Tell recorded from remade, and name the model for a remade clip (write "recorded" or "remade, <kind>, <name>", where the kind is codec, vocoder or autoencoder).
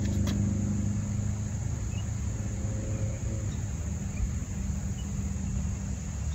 recorded